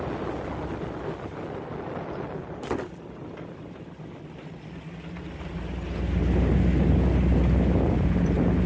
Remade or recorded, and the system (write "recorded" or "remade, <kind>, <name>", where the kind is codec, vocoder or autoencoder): recorded